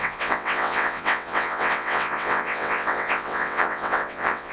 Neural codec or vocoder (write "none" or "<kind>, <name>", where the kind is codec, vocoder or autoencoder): vocoder, WaveNeXt